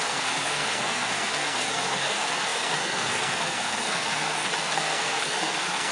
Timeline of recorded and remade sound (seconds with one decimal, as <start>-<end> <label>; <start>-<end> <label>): 0.0-5.9 remade